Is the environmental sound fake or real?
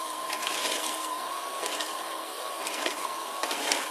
fake